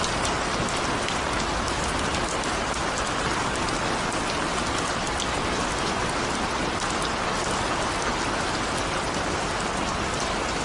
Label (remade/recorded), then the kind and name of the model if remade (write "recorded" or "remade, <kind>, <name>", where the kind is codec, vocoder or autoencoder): recorded